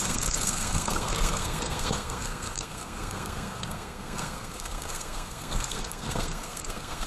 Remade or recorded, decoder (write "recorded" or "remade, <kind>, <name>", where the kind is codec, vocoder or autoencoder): remade, codec, SNAC